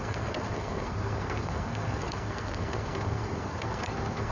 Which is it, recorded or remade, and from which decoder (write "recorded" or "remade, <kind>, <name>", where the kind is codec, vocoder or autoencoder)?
remade, codec, SNAC